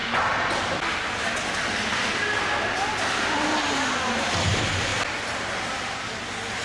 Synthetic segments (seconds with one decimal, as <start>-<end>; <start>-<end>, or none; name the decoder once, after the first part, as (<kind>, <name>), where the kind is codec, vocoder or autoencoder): none